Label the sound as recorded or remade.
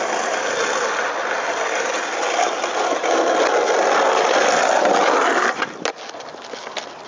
recorded